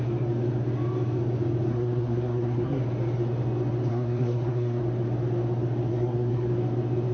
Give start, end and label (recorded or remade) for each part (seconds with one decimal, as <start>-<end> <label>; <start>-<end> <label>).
0.0-1.7 recorded; 1.7-2.8 remade; 2.8-3.9 recorded; 3.9-4.8 remade; 4.8-5.9 recorded; 5.9-6.5 remade; 6.5-7.1 recorded